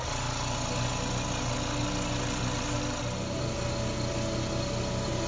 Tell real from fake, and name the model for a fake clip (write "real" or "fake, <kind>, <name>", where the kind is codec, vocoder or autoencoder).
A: real